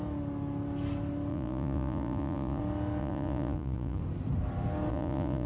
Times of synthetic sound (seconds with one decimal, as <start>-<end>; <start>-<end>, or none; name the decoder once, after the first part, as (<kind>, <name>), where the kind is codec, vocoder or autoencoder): 1.3-2.6 (vocoder, Vocos); 3.0-4.0; 4.9-5.5

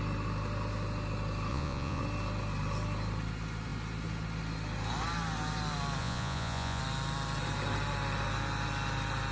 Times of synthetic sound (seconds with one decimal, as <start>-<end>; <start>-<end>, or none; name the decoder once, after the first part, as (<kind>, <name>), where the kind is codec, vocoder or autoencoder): 1.5-2.0 (vocoder, Vocos); 6.0-6.8

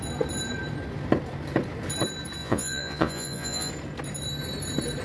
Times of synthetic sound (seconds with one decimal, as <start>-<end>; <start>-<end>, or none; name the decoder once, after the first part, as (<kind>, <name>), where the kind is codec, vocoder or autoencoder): 2.4-3.7 (vocoder, Vocos)